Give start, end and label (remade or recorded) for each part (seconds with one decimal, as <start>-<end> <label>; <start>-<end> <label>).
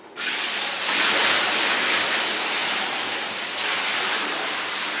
0.0-2.6 recorded; 2.6-3.2 remade; 3.2-5.0 recorded